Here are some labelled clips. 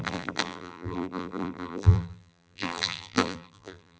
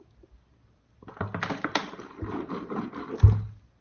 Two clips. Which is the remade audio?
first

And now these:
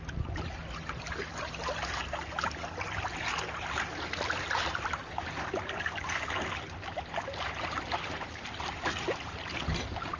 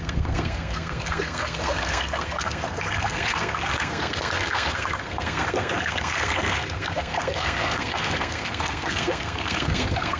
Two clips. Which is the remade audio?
second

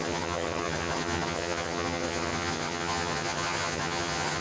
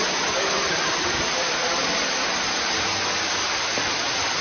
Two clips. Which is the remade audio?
first